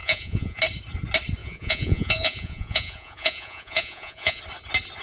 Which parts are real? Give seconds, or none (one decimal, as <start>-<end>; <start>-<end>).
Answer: 0.6-1.4; 4.4-5.0